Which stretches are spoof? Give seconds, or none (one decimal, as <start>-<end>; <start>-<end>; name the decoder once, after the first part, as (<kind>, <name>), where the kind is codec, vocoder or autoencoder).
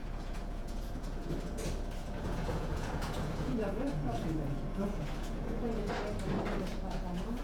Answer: 0.0-1.3 (vocoder, Vocos); 2.0-5.9; 6.7-7.4